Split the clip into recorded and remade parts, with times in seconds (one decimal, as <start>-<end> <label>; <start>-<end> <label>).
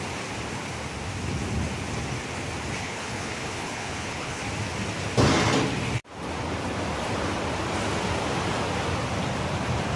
0.0-2.8 recorded; 2.8-4.4 remade; 4.4-10.0 recorded